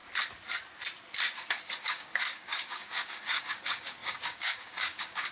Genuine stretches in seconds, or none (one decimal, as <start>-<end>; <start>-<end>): 0.0-1.8